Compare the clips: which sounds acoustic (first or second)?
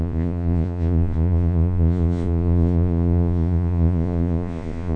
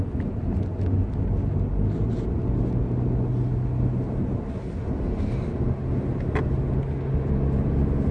second